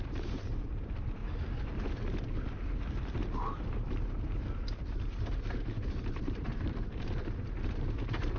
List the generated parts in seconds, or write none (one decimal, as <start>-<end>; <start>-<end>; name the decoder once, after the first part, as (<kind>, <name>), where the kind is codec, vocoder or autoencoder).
0.0-1.2 (vocoder, BigVGAN v2); 3.9-8.4